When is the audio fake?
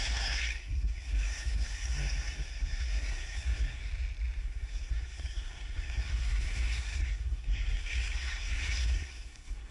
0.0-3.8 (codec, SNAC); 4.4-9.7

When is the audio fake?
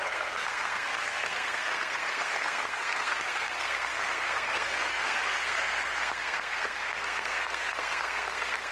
0.0-8.7 (codec, SNAC)